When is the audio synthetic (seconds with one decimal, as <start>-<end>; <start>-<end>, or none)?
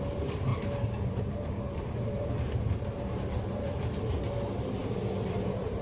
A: 0.5-4.0; 4.8-5.8